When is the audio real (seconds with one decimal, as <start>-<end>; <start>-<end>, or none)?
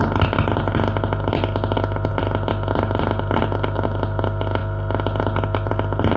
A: 0.0-6.2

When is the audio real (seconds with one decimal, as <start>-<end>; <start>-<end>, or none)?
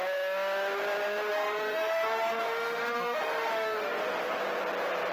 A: 0.0-1.3; 4.4-5.1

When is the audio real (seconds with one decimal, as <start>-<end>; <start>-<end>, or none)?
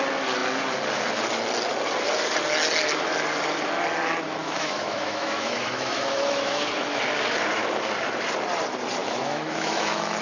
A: 0.0-4.4; 7.0-9.0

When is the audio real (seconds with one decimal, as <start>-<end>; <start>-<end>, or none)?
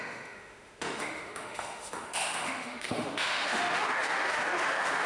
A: none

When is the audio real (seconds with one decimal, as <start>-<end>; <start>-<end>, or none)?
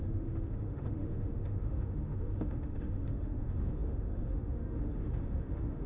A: none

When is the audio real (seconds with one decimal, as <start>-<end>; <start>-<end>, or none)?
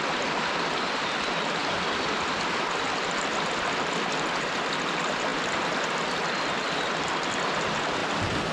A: 0.0-8.5